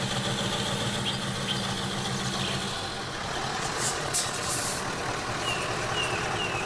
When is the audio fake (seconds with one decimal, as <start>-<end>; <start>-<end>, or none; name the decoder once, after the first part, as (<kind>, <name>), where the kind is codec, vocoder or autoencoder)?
3.2-4.5 (vocoder, Vocos)